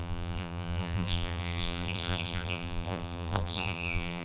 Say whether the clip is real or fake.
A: fake